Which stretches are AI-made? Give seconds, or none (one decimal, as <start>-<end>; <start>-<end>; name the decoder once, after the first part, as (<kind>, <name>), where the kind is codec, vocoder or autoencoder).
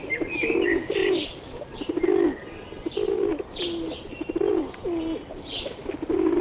none